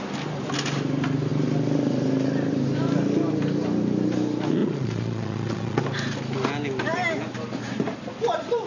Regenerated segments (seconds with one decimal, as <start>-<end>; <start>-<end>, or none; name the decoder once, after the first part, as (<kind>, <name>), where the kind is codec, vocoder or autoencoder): 4.6-5.8 (vocoder, Vocos)

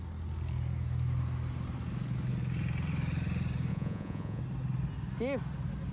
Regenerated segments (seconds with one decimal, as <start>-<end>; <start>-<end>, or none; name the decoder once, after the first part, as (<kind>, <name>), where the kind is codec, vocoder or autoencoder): 3.7-4.4 (vocoder, Vocos)

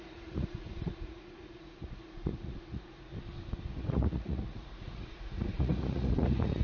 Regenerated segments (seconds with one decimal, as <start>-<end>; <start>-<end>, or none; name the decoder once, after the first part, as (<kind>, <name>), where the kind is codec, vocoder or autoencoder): 0.0-3.1 (vocoder, Vocos); 3.8-6.6

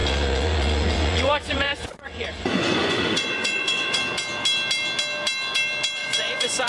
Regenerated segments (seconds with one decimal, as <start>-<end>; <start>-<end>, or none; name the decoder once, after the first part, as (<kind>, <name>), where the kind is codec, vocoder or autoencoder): 0.0-4.0 (vocoder, Vocos); 6.0-6.7

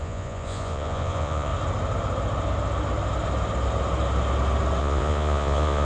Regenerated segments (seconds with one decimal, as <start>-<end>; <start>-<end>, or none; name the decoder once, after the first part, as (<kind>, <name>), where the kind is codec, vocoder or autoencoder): 0.0-1.5 (vocoder, Vocos); 4.8-5.8

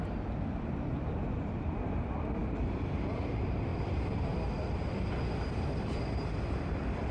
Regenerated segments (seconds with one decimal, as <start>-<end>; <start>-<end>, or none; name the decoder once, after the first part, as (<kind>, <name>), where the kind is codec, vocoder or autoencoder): none

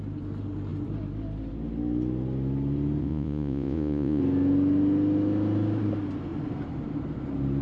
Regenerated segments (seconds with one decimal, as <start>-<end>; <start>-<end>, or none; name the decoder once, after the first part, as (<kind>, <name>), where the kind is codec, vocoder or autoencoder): 3.0-4.2 (vocoder, Vocos)